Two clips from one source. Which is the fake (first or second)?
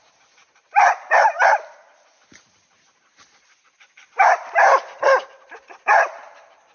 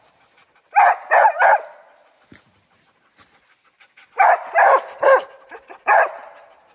first